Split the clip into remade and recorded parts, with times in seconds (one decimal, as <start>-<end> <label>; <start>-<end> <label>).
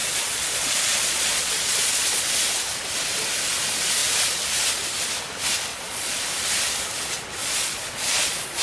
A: 0.0-2.2 remade; 2.2-5.7 recorded; 5.7-6.2 remade; 6.2-7.4 recorded; 7.4-8.6 remade